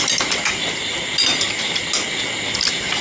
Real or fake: real